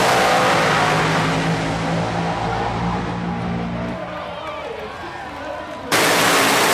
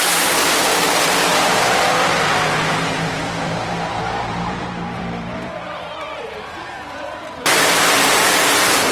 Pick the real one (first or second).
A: first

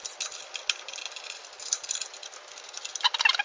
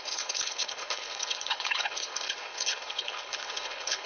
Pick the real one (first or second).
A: first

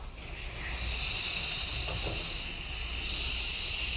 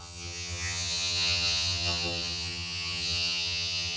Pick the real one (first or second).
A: first